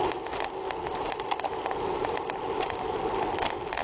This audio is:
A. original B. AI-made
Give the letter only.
A